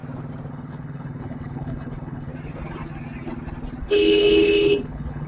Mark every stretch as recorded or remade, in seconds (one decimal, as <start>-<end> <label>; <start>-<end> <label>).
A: 0.0-0.5 recorded; 0.5-2.3 remade; 2.3-3.8 recorded; 3.8-5.3 remade